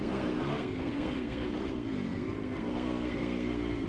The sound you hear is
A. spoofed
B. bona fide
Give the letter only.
A